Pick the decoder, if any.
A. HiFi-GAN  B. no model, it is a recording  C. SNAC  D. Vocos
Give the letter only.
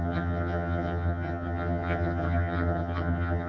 A